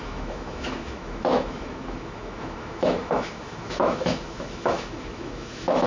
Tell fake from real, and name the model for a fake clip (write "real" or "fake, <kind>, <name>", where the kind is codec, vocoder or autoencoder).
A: fake, autoencoder, DAC-VAE